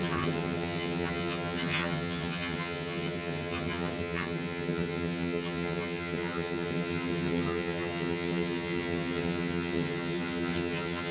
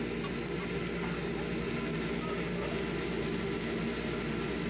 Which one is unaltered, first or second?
second